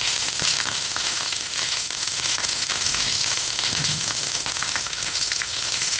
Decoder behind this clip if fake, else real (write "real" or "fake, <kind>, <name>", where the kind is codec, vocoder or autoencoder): fake, autoencoder, DAC-VAE